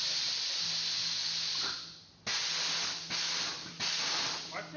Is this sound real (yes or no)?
yes